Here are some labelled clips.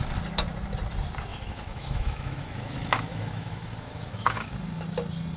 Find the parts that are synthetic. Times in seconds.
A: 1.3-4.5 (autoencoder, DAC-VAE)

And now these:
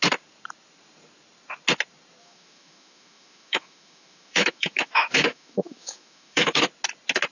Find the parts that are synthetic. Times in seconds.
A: 2.2-6.6 (autoencoder, DAC-VAE)

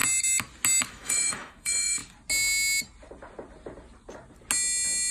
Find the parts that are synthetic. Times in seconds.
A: 0.9-2.0 (autoencoder, DAC-VAE)